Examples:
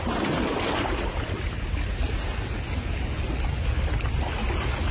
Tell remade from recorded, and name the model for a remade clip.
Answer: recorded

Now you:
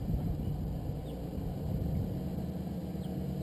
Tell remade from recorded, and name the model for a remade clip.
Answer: recorded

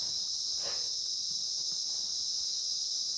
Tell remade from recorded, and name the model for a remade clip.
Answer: recorded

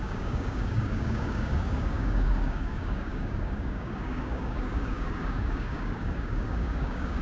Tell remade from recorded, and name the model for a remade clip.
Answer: remade, codec, DAC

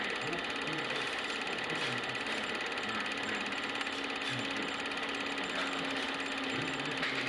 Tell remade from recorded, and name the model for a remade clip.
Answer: recorded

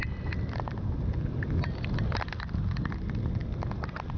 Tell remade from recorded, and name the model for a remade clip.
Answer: recorded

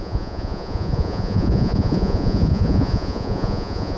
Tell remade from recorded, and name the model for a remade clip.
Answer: remade, vocoder, Vocos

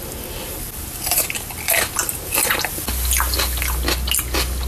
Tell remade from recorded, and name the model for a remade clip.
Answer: recorded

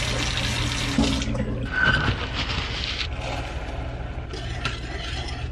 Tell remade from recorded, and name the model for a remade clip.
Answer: recorded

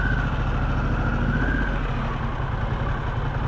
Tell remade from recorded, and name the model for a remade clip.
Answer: recorded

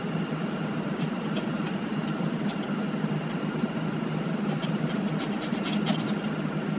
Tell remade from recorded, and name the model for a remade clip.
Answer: recorded